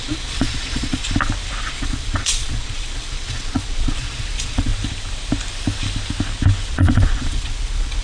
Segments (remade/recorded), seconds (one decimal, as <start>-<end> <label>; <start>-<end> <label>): 0.0-1.0 remade; 1.0-1.7 recorded; 1.7-4.7 remade; 4.7-6.7 recorded; 6.7-8.0 remade